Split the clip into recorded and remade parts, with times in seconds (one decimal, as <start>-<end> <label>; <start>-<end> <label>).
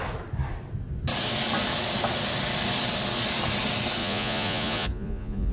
0.0-4.0 recorded; 4.0-5.5 remade